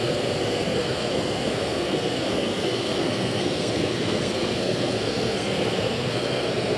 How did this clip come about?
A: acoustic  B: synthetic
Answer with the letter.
B